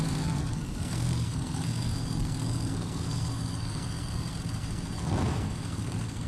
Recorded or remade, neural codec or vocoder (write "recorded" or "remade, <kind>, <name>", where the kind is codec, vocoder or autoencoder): remade, codec, SNAC